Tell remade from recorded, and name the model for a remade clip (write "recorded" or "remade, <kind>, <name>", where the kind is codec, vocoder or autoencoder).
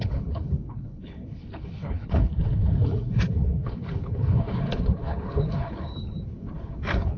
remade, codec, HILCodec